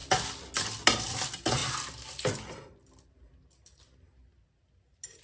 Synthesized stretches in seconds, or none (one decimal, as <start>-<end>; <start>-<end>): none